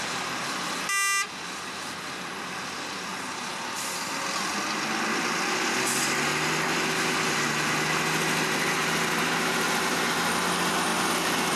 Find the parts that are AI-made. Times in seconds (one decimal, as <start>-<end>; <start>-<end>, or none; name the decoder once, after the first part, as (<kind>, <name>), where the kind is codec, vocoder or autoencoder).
none